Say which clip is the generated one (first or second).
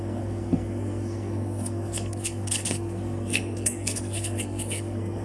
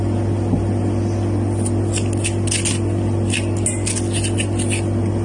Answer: first